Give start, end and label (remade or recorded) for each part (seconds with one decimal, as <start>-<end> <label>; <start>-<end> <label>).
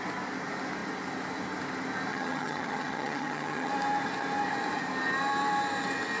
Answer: 0.0-2.1 recorded; 2.1-3.7 remade; 3.7-6.2 recorded